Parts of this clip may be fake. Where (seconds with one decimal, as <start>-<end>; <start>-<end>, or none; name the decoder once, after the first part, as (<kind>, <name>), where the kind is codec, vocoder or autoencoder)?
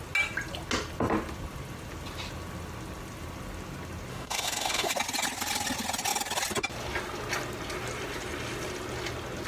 4.1-4.9 (autoencoder, DAC-VAE)